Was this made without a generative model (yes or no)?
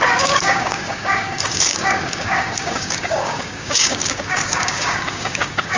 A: no